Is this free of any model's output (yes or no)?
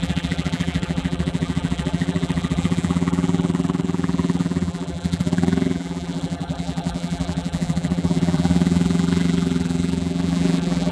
no